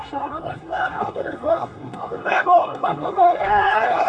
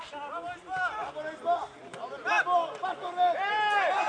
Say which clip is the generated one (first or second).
first